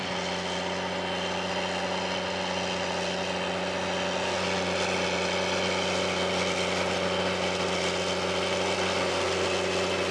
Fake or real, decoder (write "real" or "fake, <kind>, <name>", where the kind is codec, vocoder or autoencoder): real